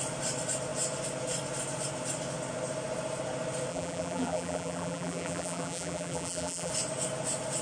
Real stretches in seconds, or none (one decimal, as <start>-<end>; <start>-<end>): 0.0-3.7; 6.7-7.6